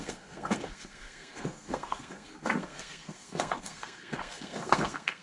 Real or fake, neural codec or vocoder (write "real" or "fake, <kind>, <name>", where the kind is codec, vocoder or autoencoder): fake, codec, SNAC